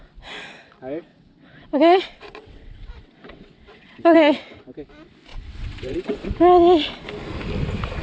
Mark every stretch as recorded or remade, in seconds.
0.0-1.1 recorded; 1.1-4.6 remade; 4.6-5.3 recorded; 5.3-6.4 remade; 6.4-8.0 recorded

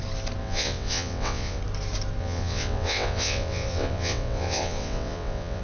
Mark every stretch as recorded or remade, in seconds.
0.0-0.4 recorded; 0.4-1.6 remade; 1.6-2.2 recorded; 2.2-5.6 remade

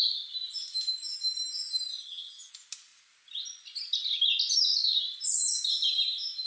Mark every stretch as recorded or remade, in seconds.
0.0-2.0 recorded; 2.0-2.5 remade; 2.5-6.5 recorded